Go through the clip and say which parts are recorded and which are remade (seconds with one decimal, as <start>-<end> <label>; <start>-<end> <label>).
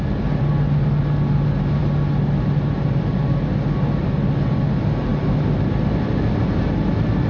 0.0-7.3 recorded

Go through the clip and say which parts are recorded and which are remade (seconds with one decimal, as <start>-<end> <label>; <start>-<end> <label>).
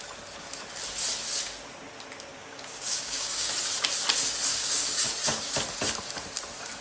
0.0-2.3 recorded; 2.3-3.5 remade; 3.5-4.5 recorded; 4.5-5.1 remade; 5.1-6.8 recorded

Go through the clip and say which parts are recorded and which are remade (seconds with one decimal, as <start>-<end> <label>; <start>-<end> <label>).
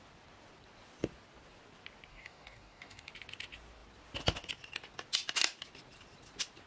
0.0-2.1 recorded; 2.1-3.1 remade; 3.1-6.7 recorded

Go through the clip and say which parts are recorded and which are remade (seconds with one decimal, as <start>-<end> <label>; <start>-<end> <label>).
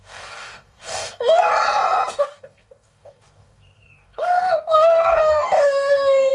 0.0-1.5 remade; 1.5-2.2 recorded; 2.2-6.3 remade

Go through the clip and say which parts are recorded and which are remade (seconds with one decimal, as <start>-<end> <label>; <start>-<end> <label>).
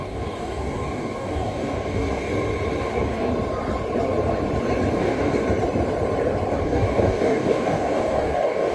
0.0-2.3 remade; 2.3-2.8 recorded; 2.8-3.3 remade; 3.3-4.9 recorded; 4.9-5.4 remade; 5.4-6.6 recorded; 6.6-8.7 remade